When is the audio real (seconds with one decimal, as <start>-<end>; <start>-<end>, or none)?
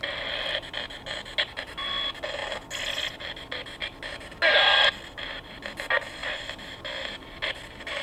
0.0-8.0